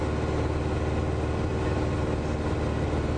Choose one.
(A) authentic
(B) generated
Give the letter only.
A